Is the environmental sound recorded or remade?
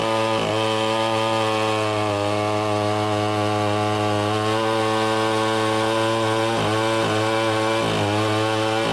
recorded